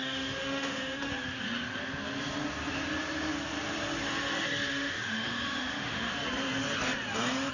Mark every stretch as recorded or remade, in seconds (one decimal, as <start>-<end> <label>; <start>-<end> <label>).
0.0-1.1 remade; 1.1-4.7 recorded; 4.7-6.1 remade; 6.1-7.5 recorded